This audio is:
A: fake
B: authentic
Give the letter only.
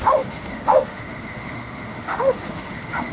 A